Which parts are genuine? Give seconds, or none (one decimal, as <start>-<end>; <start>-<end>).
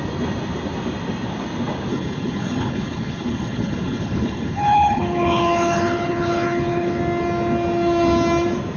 0.0-1.9; 7.0-8.8